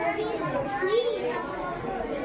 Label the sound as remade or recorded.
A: recorded